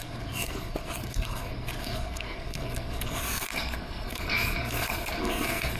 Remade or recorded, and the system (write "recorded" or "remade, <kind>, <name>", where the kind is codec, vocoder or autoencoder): remade, codec, SNAC